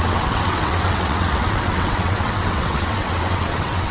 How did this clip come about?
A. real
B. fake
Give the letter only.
B